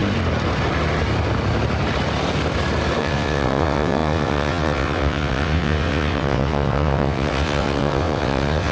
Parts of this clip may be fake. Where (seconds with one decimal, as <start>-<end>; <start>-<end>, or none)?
3.0-8.7